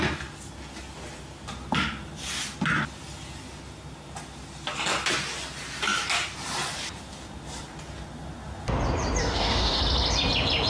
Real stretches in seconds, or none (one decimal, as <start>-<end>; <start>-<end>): 0.0-9.2; 9.8-10.7